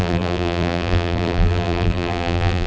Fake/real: fake